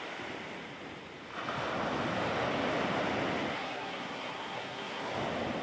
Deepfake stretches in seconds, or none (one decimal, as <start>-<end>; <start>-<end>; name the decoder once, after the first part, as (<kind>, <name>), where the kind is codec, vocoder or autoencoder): 3.5-5.1 (codec, SNAC)